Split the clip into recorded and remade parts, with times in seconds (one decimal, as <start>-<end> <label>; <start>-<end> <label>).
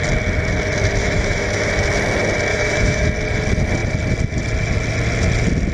0.0-1.0 recorded; 1.0-1.7 remade; 1.7-2.5 recorded; 2.5-3.0 remade; 3.0-5.7 recorded